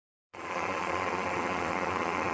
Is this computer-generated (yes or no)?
yes